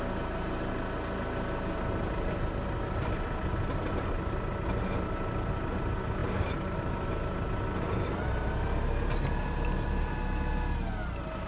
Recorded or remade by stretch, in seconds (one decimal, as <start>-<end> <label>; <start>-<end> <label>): 0.0-6.2 recorded; 6.2-7.1 remade; 7.1-11.5 recorded